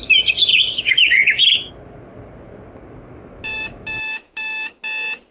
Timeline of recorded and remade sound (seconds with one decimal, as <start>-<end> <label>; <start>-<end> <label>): 0.0-0.5 recorded; 0.5-1.7 remade; 1.7-3.5 recorded; 3.5-4.8 remade; 4.8-5.3 recorded